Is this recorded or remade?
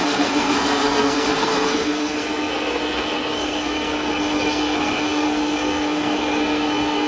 remade